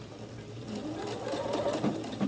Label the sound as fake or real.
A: real